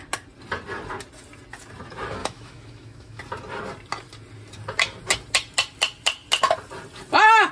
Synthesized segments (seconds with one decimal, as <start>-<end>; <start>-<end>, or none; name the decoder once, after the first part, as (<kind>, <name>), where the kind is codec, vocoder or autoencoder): 2.2-3.2 (autoencoder, DAC-VAE)

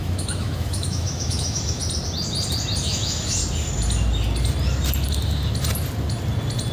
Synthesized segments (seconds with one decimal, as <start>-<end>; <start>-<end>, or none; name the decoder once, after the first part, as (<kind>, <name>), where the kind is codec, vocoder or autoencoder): 0.0-1.8 (autoencoder, DAC-VAE); 2.8-3.4

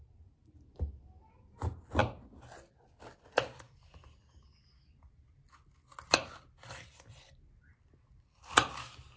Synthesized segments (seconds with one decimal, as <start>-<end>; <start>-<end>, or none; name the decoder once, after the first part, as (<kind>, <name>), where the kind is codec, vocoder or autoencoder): none

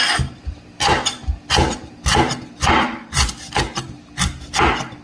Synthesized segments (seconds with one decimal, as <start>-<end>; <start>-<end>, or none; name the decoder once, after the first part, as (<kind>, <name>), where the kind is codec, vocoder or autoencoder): none

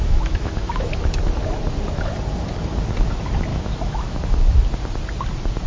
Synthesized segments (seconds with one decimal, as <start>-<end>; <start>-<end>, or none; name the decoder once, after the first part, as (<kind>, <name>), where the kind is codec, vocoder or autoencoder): 0.0-0.9 (autoencoder, DAC-VAE); 3.5-4.2